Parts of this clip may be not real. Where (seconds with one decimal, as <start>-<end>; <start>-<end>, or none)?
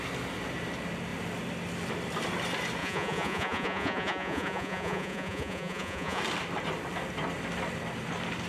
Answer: 2.8-6.2